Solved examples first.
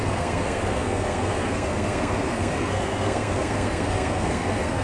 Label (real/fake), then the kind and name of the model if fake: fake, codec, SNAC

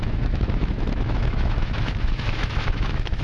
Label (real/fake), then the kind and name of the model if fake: fake, autoencoder, DAC-VAE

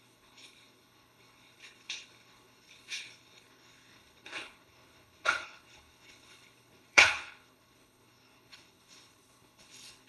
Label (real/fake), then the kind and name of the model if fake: fake, codec, HILCodec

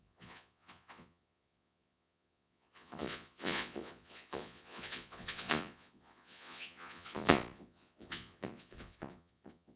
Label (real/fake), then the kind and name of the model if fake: fake, vocoder, Vocos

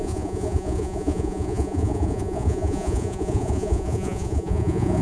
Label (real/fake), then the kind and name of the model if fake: fake, vocoder, Vocos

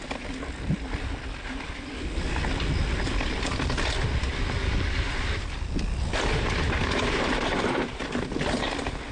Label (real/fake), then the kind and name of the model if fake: real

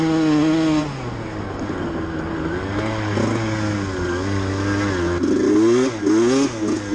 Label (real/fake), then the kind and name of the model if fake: real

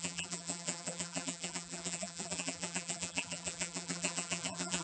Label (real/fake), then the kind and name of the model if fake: fake, vocoder, BigVGAN v2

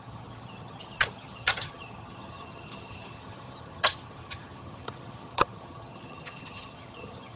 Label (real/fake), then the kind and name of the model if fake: fake, vocoder, HiFi-GAN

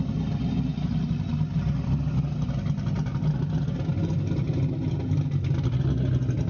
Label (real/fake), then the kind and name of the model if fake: real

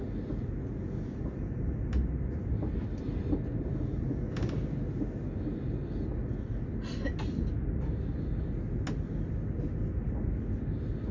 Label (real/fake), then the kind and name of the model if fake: real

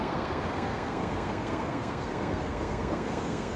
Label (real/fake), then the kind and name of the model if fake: fake, codec, SNAC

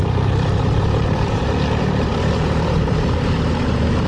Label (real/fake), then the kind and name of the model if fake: fake, vocoder, BigVGAN v2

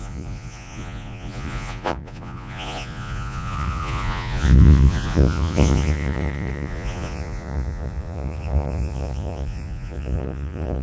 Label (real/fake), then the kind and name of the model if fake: fake, vocoder, Vocos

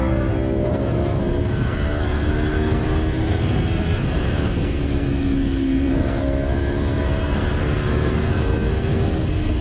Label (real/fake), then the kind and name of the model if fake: fake, codec, SNAC